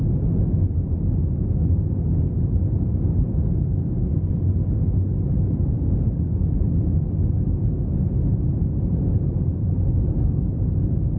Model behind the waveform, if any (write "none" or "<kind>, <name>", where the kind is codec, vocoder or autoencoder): none